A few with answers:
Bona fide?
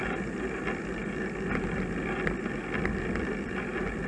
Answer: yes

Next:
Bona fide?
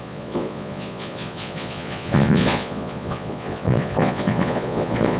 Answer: no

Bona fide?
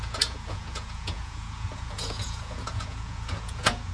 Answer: no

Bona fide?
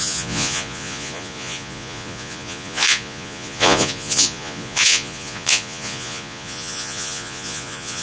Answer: no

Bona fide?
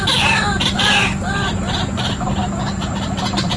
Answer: yes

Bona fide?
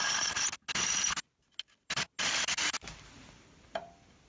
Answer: yes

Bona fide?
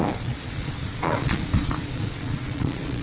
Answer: no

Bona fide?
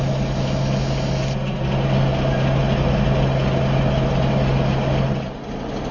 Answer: yes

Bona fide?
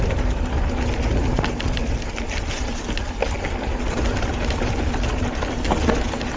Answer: yes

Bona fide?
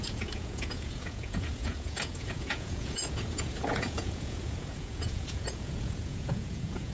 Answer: no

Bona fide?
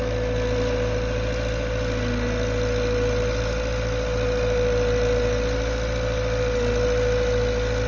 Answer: yes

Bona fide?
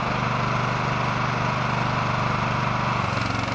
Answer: yes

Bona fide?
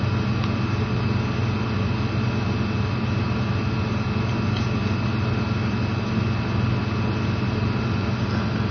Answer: yes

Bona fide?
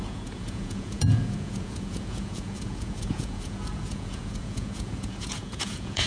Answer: no